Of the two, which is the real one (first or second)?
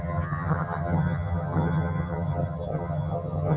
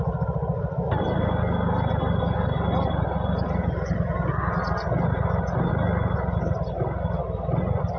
second